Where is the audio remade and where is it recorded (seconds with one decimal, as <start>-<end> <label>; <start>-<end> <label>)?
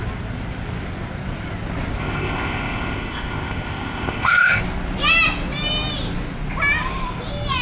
0.0-2.0 recorded; 2.0-4.6 remade; 4.6-7.6 recorded